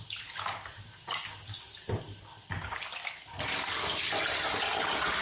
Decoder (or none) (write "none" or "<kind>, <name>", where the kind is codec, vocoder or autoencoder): none